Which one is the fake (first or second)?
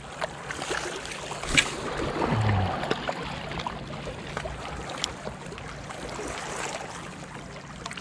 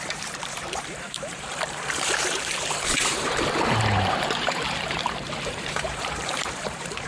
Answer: second